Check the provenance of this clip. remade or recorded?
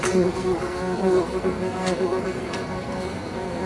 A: remade